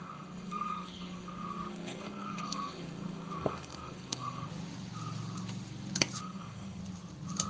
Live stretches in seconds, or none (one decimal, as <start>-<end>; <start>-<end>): 4.5-6.2; 6.8-7.5